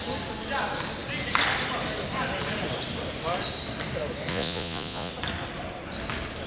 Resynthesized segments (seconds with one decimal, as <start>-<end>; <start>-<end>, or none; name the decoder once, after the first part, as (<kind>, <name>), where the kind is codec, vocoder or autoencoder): 4.3-5.1 (vocoder, Vocos)

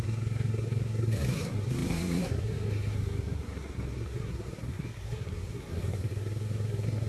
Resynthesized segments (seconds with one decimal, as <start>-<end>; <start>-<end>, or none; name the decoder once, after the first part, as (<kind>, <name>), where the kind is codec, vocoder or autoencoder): 0.0-7.1 (codec, SNAC)

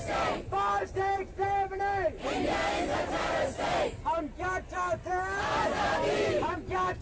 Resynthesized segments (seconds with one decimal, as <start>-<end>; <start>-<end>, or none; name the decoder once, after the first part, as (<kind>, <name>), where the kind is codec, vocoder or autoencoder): none

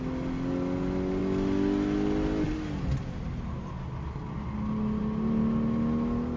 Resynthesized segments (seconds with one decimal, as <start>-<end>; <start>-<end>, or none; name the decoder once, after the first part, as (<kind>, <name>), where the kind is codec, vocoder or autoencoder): none

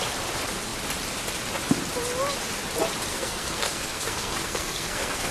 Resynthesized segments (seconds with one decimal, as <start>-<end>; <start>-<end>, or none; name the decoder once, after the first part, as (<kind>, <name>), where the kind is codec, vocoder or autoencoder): 3.1-5.3 (codec, SNAC)